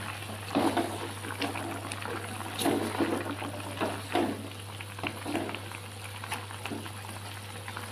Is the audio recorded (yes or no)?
yes